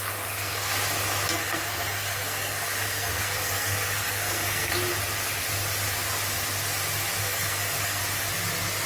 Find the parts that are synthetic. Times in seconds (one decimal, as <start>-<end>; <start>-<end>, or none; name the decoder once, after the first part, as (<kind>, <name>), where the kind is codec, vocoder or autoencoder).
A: 0.0-0.7 (codec, SNAC); 1.3-4.7; 7.2-8.0